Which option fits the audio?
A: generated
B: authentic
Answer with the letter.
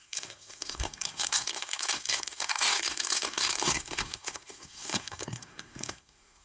A